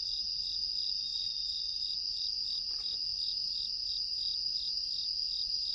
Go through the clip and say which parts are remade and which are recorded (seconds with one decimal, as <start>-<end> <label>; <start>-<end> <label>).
0.0-3.1 recorded; 3.1-3.9 remade; 3.9-5.7 recorded